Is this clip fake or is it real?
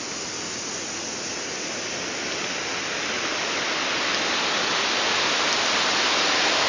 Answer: real